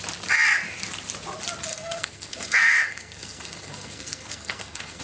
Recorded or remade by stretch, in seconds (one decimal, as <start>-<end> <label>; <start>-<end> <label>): 0.0-1.7 recorded; 1.7-5.0 remade